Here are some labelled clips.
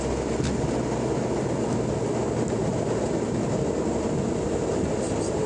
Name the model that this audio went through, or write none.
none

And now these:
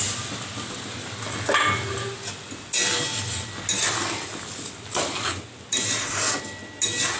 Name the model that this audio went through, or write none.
none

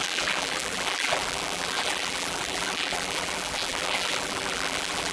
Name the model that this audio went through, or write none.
vocoder, BigVGAN v2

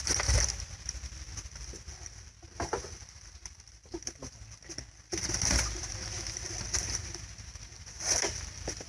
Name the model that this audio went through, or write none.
vocoder, BigVGAN v2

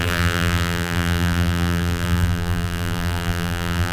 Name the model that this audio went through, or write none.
vocoder, BigVGAN v2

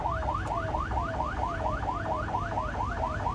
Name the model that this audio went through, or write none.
none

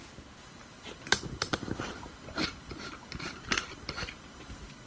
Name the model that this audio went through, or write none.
vocoder, BigVGAN v2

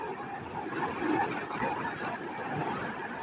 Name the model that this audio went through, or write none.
none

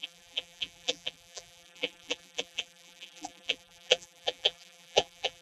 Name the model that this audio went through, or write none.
vocoder, BigVGAN v2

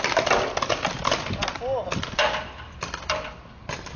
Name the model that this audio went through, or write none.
none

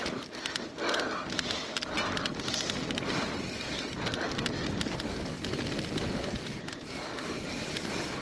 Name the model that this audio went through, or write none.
none